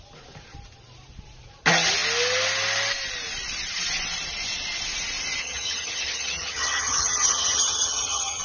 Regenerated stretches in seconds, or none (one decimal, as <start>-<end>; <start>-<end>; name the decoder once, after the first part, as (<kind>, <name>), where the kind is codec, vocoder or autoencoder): 5.4-8.4 (vocoder, HiFi-GAN)